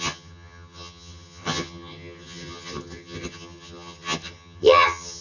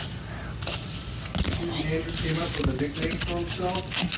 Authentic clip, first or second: second